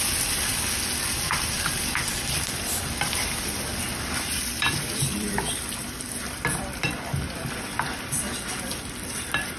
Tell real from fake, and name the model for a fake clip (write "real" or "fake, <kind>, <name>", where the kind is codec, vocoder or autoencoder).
fake, vocoder, BigVGAN v2